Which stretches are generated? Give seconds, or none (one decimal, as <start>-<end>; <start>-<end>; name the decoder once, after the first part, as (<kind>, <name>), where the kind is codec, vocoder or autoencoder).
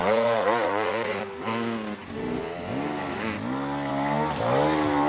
0.0-1.2 (vocoder, Vocos)